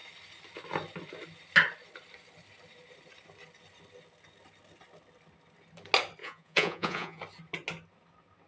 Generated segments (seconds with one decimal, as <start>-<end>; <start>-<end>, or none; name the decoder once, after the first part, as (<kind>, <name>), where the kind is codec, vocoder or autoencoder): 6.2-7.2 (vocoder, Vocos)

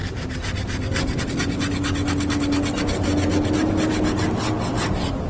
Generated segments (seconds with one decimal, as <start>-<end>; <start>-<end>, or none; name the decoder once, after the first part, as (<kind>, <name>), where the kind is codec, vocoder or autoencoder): none

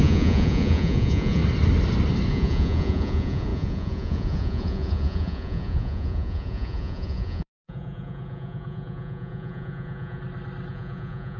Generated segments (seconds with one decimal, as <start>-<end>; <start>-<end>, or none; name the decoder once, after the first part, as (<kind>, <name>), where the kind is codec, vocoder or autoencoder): 0.0-1.4 (vocoder, Vocos); 2.3-10.2; 10.7-11.4

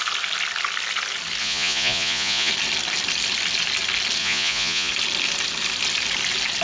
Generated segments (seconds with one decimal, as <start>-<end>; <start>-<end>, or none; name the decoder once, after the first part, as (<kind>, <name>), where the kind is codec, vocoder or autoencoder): 1.4-2.5 (vocoder, Vocos); 4.2-4.9

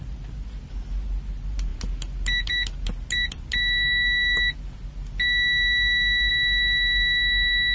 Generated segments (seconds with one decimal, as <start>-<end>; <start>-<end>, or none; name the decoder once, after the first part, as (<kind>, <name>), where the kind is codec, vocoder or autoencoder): none

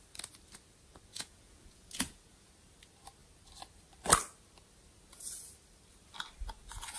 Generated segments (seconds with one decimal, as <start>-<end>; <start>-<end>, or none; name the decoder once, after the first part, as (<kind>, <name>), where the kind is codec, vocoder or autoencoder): 1.1-2.5 (vocoder, Vocos)

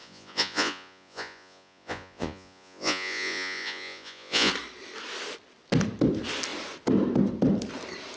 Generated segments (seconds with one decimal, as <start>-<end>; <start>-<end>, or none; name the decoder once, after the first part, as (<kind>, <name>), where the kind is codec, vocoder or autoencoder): 0.0-4.5 (vocoder, Vocos)